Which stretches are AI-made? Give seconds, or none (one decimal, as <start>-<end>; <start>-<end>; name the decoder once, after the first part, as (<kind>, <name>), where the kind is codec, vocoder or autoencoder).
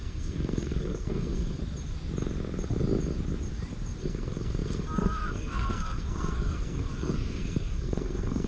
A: 0.0-1.6 (codec, SNAC); 4.0-8.5